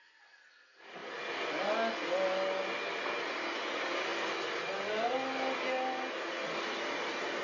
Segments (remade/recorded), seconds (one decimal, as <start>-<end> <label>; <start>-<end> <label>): 0.0-1.0 recorded; 1.0-1.5 remade; 1.5-7.4 recorded